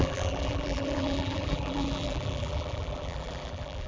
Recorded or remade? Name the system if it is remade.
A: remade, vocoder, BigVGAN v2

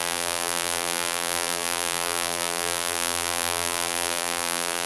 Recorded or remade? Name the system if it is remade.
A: remade, vocoder, BigVGAN v2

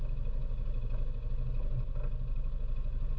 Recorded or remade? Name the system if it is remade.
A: recorded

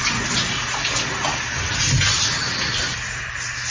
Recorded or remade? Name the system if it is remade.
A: recorded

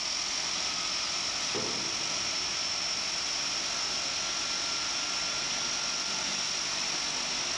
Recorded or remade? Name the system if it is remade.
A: recorded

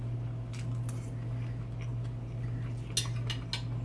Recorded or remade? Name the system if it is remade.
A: recorded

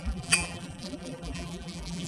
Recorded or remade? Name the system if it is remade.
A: remade, vocoder, BigVGAN v2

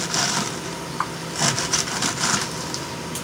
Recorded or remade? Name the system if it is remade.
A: recorded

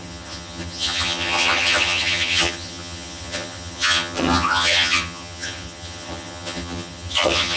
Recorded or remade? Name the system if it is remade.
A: remade, vocoder, HiFi-GAN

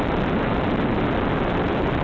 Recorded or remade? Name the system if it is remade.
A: recorded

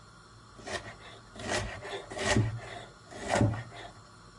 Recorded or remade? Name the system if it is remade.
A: recorded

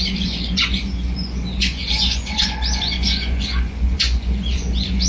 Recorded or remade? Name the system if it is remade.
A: remade, vocoder, Vocos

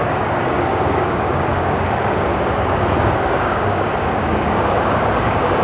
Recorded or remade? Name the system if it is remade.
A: remade, codec, DAC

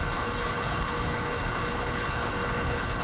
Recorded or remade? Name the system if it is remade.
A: remade, codec, HILCodec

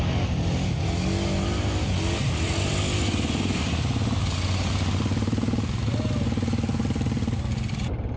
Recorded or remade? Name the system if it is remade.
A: recorded